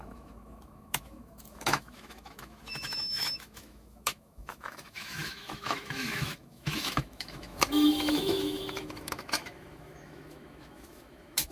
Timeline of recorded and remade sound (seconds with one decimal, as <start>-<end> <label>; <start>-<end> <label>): 0.0-11.5 remade